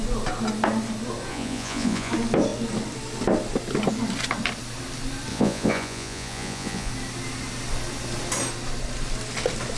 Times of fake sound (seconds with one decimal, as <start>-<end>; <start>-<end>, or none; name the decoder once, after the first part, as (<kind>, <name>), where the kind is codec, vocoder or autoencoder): 1.3-2.1 (vocoder, Vocos); 5.3-6.9